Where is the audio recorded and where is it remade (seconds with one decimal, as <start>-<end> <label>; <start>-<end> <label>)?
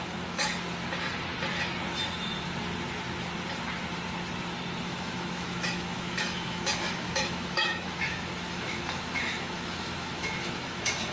0.0-0.5 remade; 0.5-4.8 recorded; 4.8-11.1 remade